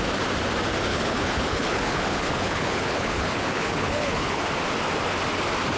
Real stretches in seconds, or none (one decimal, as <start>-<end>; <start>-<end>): 0.0-0.9; 4.4-5.8